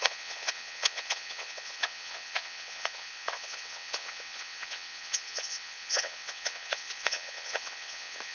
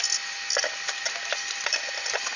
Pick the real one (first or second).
second